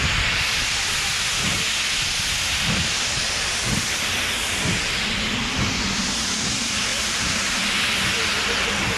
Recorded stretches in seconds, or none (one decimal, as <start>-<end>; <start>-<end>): 0.0-9.0

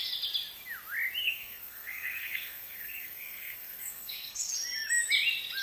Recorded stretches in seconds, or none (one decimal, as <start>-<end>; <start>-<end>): 0.0-1.2; 4.5-5.6

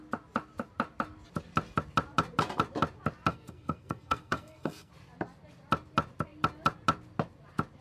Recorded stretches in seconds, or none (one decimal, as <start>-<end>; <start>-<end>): 0.0-3.3; 4.9-7.8

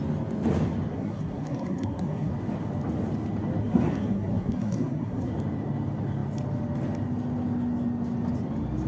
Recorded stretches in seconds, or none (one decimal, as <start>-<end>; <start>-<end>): 0.0-0.9; 2.3-3.6; 5.3-8.9